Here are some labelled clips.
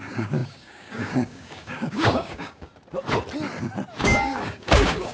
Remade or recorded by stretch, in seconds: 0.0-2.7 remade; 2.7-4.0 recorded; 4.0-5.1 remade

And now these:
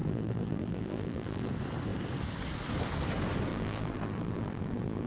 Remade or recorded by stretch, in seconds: 0.0-1.5 remade; 1.5-3.5 recorded; 3.5-5.1 remade

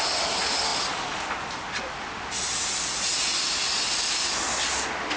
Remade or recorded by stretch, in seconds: 0.0-5.2 recorded